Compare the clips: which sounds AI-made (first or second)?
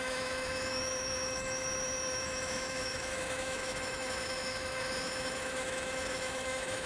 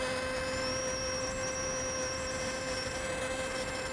first